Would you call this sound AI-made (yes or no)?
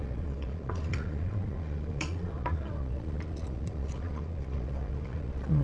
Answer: yes